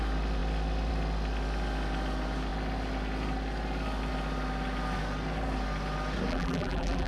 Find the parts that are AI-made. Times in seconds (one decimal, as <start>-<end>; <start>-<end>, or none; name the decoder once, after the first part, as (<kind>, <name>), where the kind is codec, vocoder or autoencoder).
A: 6.3-7.1 (vocoder, BigVGAN v2)